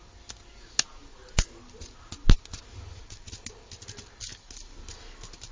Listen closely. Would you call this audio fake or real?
real